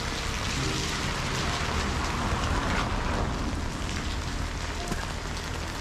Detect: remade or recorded recorded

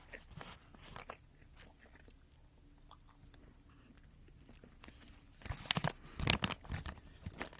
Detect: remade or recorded recorded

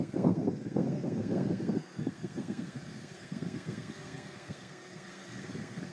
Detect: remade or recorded remade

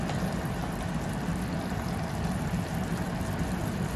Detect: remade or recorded recorded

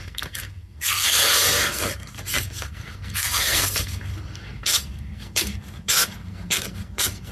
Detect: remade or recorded remade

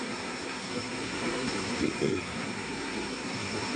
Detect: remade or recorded remade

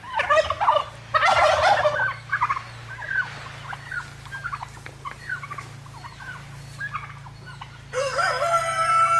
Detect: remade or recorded recorded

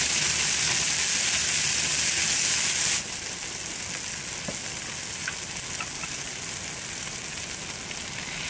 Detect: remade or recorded recorded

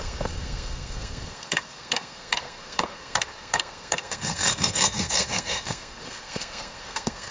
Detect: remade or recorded remade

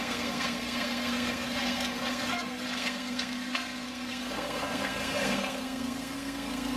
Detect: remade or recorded remade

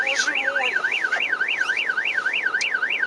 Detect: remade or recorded recorded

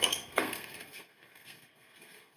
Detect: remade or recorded remade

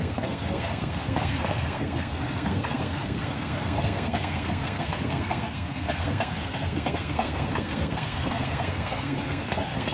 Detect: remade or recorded remade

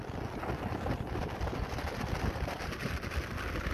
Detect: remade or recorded recorded